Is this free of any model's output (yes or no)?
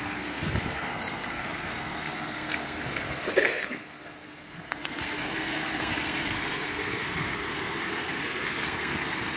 no